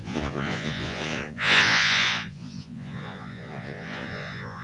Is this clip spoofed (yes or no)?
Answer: yes